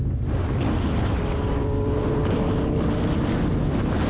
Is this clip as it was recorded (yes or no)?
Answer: yes